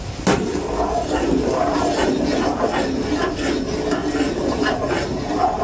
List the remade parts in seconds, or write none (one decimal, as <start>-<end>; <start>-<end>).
4.0-4.8